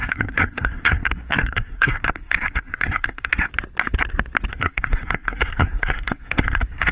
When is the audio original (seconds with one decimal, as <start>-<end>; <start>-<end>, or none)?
3.5-4.5